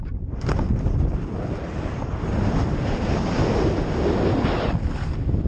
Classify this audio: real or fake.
real